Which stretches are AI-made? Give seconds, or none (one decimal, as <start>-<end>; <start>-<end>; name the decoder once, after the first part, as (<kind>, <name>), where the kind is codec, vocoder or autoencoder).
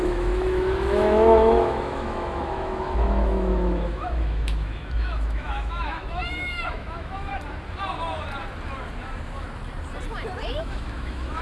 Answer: 0.0-7.3 (autoencoder, DAC-VAE); 10.5-11.4